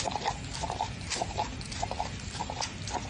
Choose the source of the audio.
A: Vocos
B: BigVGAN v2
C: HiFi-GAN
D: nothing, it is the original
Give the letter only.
D